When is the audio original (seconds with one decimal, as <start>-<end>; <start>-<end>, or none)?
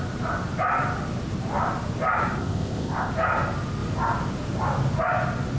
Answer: 0.0-2.4; 3.1-5.6